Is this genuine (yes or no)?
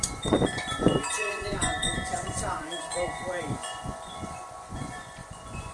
no